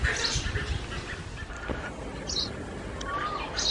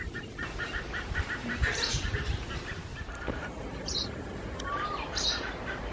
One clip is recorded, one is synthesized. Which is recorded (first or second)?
first